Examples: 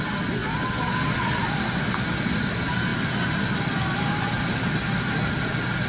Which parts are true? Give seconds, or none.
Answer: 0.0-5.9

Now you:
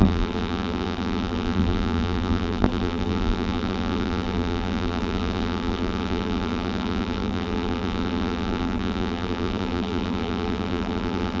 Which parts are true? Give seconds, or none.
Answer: none

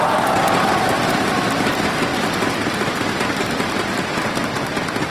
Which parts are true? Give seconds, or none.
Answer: 0.0-2.1

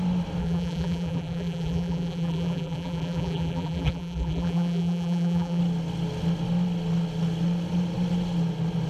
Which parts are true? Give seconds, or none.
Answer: 0.0-0.4; 5.6-8.9

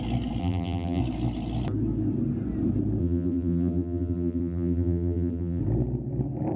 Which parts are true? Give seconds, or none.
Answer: 0.0-0.4; 1.0-3.0; 5.6-6.6

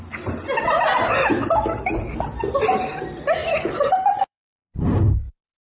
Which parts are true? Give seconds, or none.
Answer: 0.0-3.4; 5.0-5.6

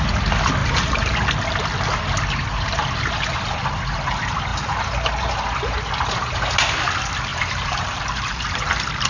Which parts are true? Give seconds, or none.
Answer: 0.0-0.6; 1.1-7.3; 8.0-9.1

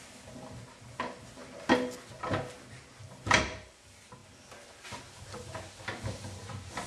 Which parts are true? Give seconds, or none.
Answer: 0.0-6.9